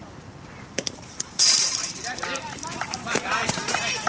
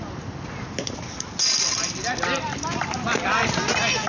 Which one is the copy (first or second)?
first